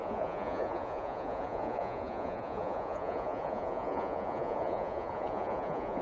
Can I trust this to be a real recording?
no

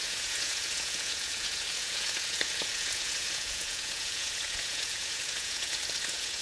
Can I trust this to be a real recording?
no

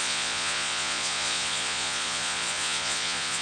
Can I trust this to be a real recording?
no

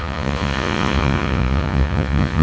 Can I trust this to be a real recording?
no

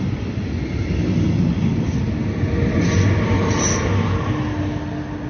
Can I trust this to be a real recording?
yes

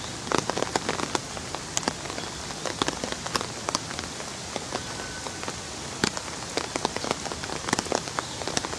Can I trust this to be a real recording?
yes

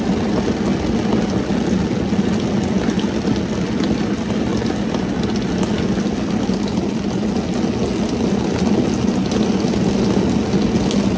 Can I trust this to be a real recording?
yes